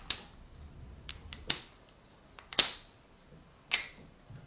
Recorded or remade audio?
recorded